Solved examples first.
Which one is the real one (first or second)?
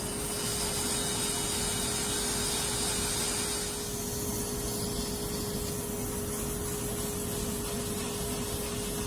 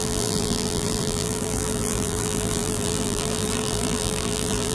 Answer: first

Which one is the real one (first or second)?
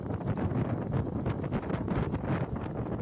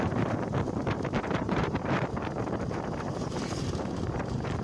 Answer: first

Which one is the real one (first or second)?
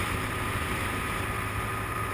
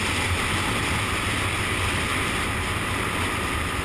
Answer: second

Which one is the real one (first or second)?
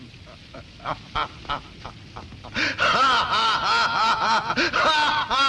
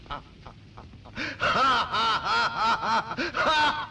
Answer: second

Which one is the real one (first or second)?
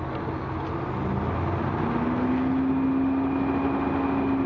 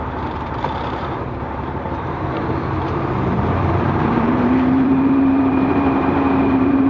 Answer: first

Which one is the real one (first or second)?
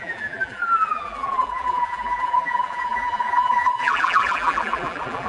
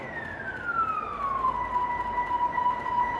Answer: second